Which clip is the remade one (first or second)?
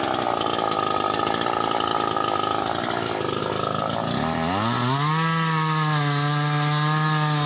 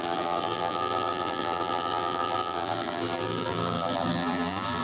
second